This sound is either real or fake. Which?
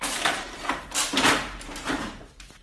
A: fake